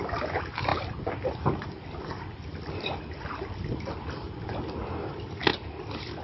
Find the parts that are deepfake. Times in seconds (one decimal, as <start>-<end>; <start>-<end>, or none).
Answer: 0.7-4.4